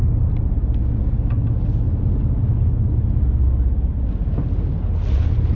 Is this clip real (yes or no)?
yes